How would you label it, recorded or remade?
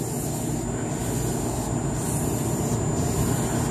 recorded